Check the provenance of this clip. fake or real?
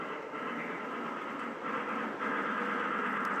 real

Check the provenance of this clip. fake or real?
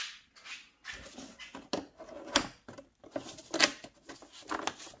real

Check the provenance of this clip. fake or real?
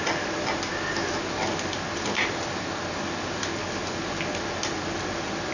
real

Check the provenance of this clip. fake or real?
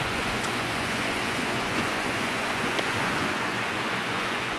fake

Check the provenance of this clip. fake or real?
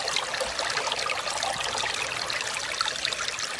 real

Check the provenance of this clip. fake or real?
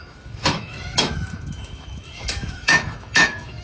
fake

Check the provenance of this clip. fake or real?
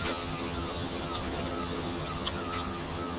fake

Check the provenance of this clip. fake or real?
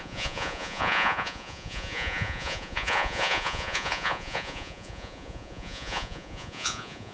fake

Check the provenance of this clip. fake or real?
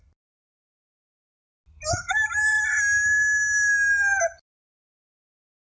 real